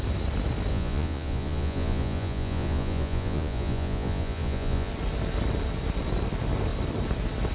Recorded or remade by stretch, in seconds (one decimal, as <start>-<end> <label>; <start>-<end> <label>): 0.0-0.7 recorded; 0.7-4.9 remade; 4.9-7.5 recorded